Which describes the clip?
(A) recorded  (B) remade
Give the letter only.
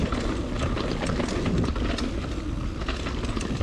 A